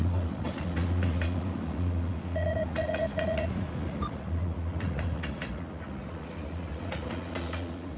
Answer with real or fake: fake